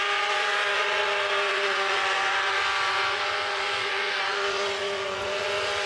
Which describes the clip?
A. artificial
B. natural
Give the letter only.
A